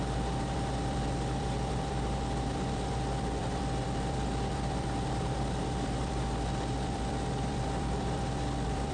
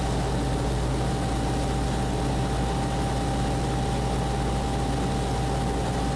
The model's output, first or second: first